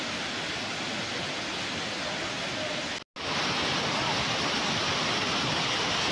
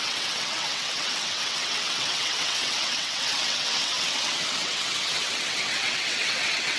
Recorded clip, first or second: first